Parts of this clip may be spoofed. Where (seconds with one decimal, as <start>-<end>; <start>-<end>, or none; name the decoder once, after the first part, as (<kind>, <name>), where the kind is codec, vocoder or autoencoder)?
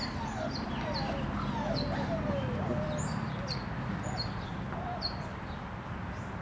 none